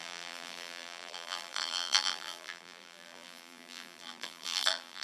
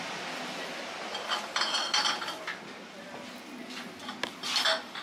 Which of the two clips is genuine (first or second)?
second